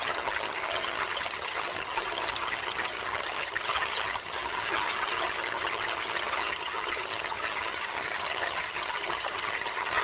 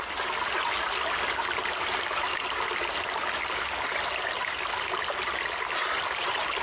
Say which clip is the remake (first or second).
first